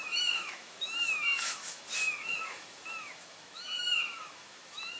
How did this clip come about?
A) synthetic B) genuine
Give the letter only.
A